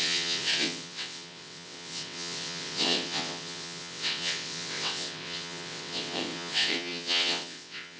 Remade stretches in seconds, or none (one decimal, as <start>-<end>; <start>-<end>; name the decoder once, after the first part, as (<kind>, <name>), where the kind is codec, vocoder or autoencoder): 0.0-8.0 (vocoder, WaveNeXt)

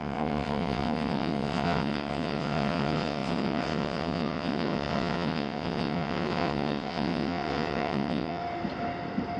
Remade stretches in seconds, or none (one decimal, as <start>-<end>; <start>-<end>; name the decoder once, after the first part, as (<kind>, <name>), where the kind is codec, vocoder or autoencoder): 0.0-8.4 (vocoder, WaveNeXt)

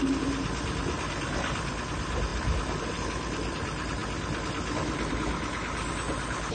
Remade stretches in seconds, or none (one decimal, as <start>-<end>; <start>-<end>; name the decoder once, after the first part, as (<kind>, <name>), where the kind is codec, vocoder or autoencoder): none

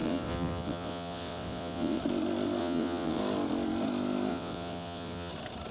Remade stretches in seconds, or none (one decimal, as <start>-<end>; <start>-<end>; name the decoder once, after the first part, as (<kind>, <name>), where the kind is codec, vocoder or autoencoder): 0.0-2.0 (vocoder, WaveNeXt); 2.6-3.2; 4.3-5.3

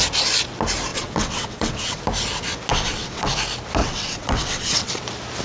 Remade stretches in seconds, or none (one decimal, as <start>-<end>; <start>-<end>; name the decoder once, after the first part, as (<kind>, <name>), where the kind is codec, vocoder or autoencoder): 0.9-2.0 (vocoder, WaveNeXt); 2.7-3.3; 3.8-5.0

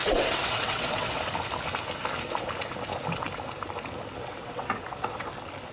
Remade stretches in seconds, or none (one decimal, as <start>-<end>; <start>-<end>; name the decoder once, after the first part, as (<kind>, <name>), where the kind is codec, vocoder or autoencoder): 0.0-1.2 (vocoder, WaveNeXt); 4.2-5.3

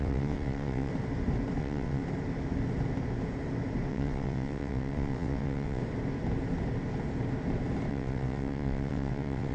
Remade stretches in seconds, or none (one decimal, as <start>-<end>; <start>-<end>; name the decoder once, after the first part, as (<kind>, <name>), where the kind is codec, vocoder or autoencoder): 0.0-0.9 (vocoder, WaveNeXt); 1.6-2.0; 3.9-5.8; 7.9-9.5

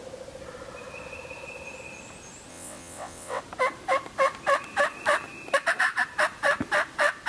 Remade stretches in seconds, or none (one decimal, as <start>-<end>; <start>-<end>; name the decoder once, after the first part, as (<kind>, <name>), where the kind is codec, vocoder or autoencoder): 2.5-3.4 (vocoder, WaveNeXt)